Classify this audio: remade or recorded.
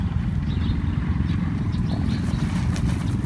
recorded